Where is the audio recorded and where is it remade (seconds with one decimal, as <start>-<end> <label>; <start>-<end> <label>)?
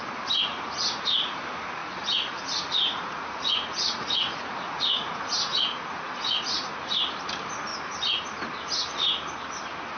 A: 0.0-0.5 recorded; 0.5-1.4 remade; 1.4-1.8 recorded; 1.8-6.7 remade; 6.7-10.0 recorded